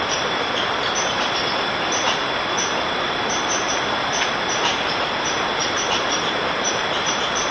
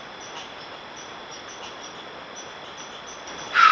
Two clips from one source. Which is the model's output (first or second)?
first